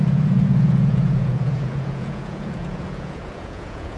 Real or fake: fake